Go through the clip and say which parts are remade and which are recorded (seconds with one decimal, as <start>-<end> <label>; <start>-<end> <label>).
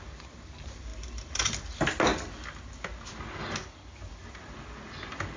0.0-5.4 recorded